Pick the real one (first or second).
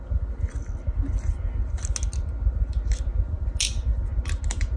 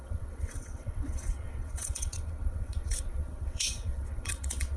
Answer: first